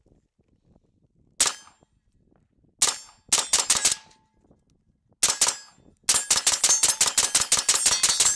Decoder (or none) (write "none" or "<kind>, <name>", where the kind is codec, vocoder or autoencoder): none